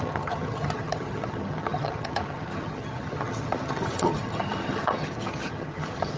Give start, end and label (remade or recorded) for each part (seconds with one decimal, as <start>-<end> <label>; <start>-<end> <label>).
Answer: 0.0-6.2 remade